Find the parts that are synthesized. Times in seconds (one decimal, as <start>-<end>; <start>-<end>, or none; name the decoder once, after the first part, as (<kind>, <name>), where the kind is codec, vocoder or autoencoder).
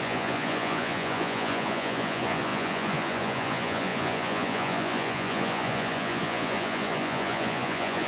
0.0-8.1 (vocoder, Vocos)